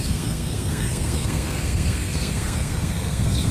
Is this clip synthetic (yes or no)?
yes